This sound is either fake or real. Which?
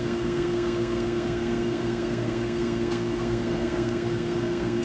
fake